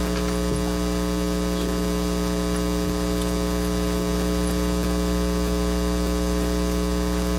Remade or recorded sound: recorded